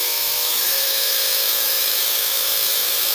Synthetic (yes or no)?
yes